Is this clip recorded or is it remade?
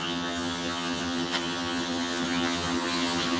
remade